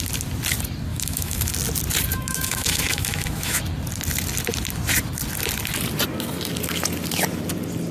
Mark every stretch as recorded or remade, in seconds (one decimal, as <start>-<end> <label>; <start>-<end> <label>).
0.0-0.9 recorded; 0.9-1.5 remade; 1.5-2.1 recorded; 2.1-3.6 remade; 3.6-7.9 recorded